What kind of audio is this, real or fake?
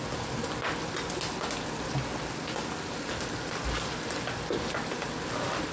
real